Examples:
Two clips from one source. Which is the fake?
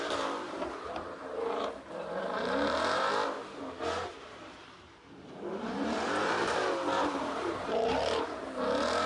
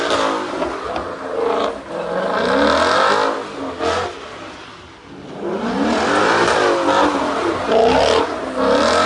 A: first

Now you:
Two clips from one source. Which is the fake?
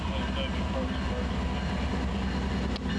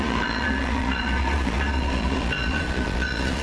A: second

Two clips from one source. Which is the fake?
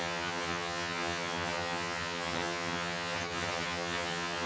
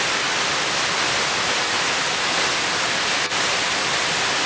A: first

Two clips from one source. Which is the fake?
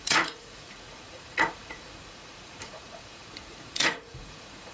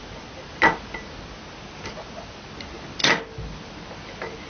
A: first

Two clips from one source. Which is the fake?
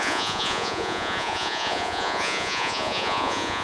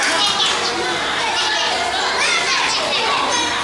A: first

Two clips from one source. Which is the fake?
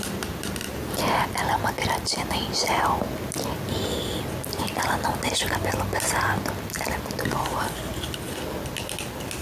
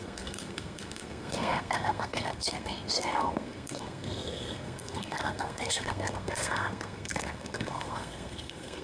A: second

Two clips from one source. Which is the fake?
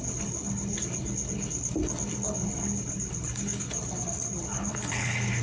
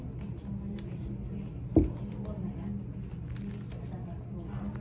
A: first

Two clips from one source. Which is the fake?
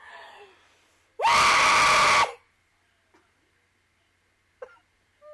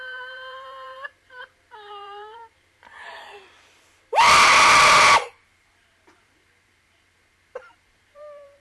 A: second